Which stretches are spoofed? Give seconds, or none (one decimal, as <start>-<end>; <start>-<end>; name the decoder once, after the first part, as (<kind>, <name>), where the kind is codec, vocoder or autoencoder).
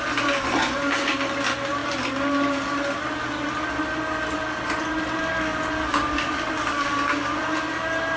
0.6-1.1 (vocoder, Vocos)